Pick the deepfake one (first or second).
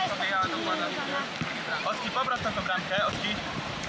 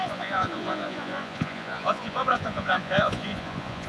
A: second